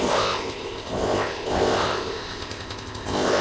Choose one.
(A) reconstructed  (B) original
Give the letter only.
A